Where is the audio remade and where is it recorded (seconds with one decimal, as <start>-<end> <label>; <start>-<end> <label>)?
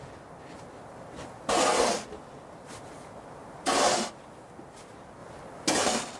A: 0.0-6.2 recorded